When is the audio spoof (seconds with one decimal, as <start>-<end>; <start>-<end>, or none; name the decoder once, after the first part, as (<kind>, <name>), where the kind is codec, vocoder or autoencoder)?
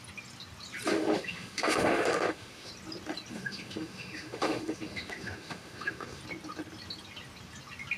0.9-2.7 (autoencoder, DAC-VAE); 3.3-6.2